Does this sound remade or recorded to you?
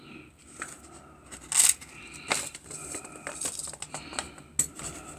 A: recorded